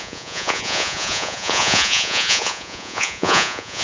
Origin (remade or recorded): remade